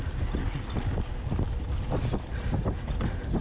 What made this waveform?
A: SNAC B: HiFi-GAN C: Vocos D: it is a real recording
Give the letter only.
D